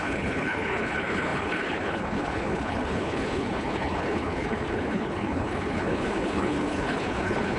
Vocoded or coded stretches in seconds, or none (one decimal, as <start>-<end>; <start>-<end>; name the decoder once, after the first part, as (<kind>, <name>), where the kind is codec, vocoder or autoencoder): 0.0-7.6 (codec, HILCodec)